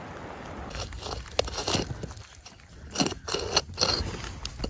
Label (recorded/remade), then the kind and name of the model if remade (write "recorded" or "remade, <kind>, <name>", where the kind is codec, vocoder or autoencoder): recorded